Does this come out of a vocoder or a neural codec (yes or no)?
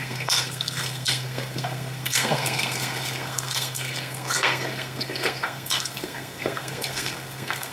yes